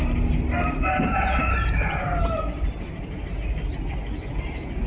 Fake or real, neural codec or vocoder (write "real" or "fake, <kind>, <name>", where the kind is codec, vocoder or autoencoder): real